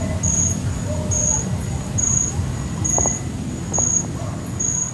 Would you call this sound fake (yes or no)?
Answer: no